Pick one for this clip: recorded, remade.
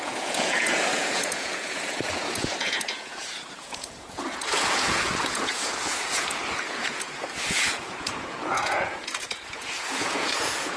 remade